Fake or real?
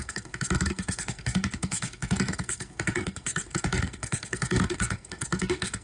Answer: fake